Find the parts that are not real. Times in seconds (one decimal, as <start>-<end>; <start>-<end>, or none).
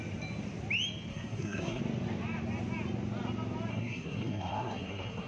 1.1-1.8; 3.7-5.3